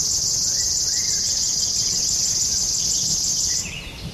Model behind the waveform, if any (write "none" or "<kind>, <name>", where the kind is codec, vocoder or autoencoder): vocoder, BigVGAN v2